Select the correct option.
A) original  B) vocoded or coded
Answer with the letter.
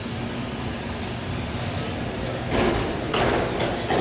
A